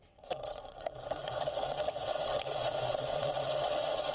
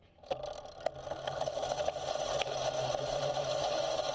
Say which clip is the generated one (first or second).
first